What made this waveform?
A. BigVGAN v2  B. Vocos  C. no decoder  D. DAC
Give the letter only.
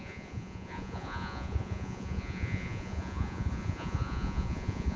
B